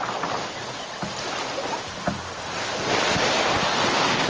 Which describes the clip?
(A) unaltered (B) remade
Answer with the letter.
A